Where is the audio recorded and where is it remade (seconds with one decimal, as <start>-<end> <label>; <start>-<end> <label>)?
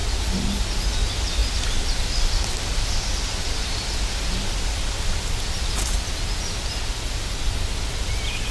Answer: 0.0-8.5 recorded